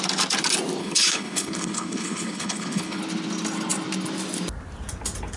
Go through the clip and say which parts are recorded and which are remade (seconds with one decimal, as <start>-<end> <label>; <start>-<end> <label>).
0.0-0.8 recorded; 0.8-3.0 remade; 3.0-5.4 recorded